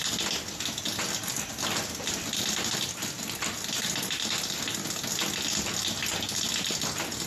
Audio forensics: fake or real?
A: real